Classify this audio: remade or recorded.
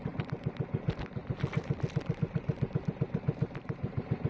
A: recorded